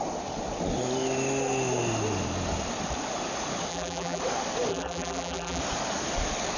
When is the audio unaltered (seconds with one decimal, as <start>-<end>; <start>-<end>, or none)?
0.0-3.7; 4.2-4.7; 5.6-6.6